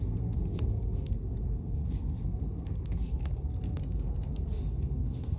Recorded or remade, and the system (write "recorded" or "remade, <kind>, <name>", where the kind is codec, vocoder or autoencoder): remade, codec, SNAC